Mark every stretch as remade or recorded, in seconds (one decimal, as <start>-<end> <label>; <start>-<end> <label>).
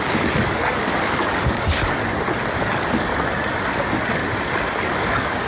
0.0-2.0 remade; 2.0-2.6 recorded; 2.6-3.1 remade; 3.1-3.7 recorded; 3.7-4.2 remade; 4.2-4.8 recorded; 4.8-5.5 remade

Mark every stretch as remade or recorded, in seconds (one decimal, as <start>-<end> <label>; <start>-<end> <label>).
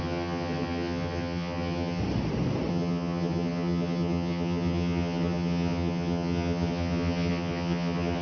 0.0-2.0 remade; 2.0-2.7 recorded; 2.7-8.2 remade